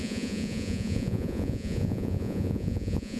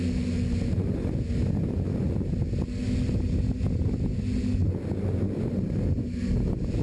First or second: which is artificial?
first